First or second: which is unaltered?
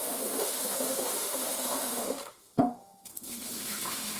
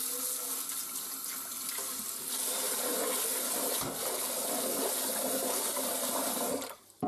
second